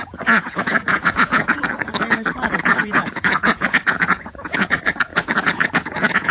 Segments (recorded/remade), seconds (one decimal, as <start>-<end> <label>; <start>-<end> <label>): 0.0-1.7 remade; 1.7-2.6 recorded; 2.6-6.3 remade